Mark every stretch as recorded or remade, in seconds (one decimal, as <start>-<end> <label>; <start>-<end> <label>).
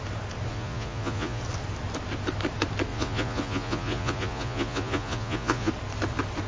0.0-0.5 recorded; 0.5-1.4 remade; 1.4-2.9 recorded; 2.9-5.7 remade; 5.7-6.5 recorded